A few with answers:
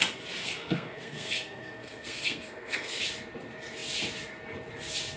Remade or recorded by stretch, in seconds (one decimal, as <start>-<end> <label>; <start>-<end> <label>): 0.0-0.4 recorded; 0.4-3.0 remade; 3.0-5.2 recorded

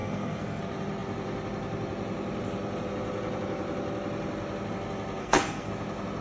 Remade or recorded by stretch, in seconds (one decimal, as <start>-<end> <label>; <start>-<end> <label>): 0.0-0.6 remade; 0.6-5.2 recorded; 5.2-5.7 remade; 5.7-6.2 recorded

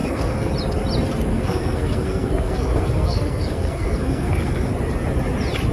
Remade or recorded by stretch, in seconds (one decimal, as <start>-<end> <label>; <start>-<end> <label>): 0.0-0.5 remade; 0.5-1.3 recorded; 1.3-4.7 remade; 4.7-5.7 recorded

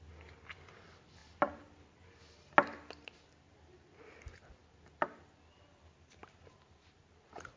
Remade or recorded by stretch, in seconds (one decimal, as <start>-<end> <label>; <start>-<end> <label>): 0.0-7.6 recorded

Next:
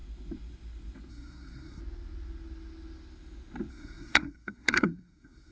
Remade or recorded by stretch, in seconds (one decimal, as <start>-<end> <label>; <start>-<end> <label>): 0.0-1.1 recorded; 1.1-1.8 remade; 1.8-3.7 recorded; 3.7-5.5 remade

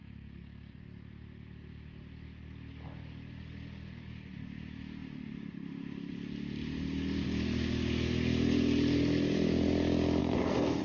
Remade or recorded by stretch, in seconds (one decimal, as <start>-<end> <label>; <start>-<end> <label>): 0.0-0.8 remade; 0.8-10.2 recorded; 10.2-10.8 remade